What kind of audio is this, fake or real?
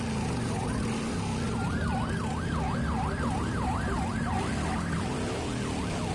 real